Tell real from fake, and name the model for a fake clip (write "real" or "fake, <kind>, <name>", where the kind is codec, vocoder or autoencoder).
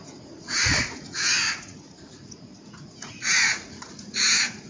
fake, vocoder, Vocos